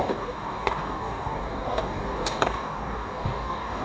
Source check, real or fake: fake